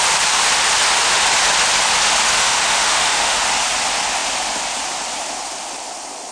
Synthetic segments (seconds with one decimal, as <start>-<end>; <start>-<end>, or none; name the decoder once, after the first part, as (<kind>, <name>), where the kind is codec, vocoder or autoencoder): 2.3-3.4 (autoencoder, DAC-VAE)

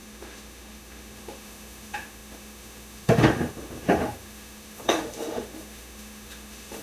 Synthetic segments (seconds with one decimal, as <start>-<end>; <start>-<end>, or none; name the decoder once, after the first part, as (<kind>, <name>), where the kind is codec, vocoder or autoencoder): 0.0-6.8 (autoencoder, DAC-VAE)

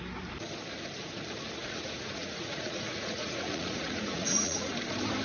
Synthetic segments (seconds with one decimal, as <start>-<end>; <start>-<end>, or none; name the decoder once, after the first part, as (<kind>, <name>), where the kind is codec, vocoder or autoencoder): 1.6-4.7 (vocoder, Vocos)

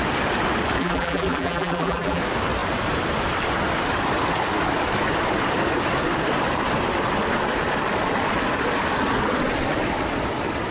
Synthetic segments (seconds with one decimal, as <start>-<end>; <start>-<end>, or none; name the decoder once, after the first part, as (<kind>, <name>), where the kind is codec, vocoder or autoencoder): 0.8-2.2 (vocoder, BigVGAN v2)

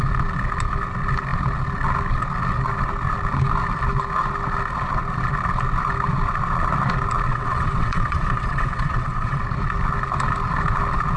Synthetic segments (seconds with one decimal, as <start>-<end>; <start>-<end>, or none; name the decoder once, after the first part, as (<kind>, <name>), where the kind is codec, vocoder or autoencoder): 7.3-9.4 (vocoder, WaveNeXt)